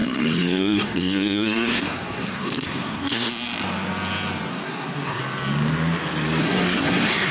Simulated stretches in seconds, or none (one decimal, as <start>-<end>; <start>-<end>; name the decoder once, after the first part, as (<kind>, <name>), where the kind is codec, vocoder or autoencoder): 0.0-3.3 (codec, SNAC); 4.5-5.2; 6.4-7.3